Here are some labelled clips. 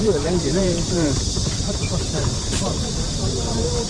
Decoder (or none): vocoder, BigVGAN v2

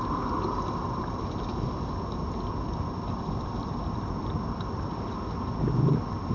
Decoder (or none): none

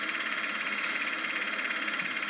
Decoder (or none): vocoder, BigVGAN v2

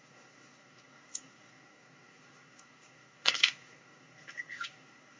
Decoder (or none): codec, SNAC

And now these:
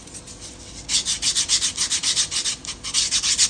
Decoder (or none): none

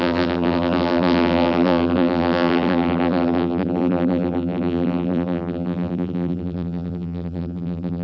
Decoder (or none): vocoder, BigVGAN v2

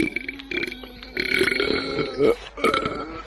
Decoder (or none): none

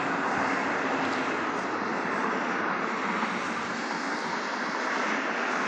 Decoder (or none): none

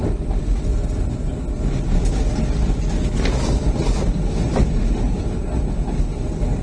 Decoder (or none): none